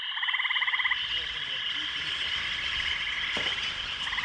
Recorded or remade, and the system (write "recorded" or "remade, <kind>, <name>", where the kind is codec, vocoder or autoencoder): recorded